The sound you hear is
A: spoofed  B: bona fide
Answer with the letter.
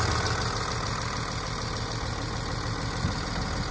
B